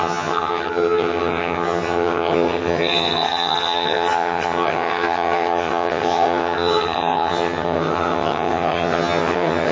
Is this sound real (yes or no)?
no